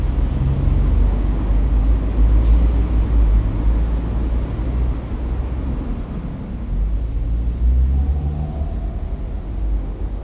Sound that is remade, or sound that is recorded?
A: recorded